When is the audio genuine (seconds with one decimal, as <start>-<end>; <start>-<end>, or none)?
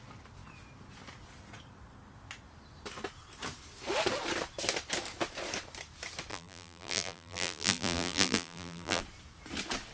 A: 0.0-6.3; 9.0-9.9